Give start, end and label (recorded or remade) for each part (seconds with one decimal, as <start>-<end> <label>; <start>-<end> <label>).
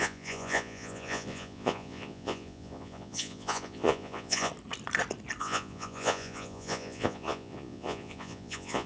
0.0-4.5 remade; 4.5-5.4 recorded; 5.4-8.9 remade